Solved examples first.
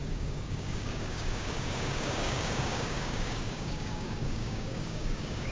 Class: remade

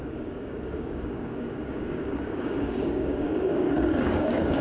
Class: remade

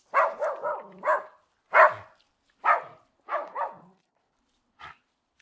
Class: recorded